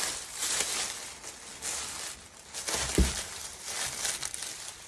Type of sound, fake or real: real